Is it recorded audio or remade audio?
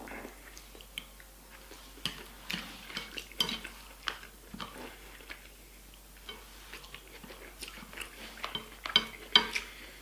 recorded